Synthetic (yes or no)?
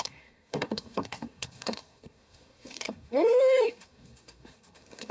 yes